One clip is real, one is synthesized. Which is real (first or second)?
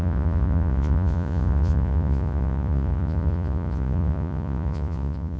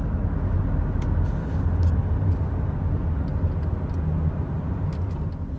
second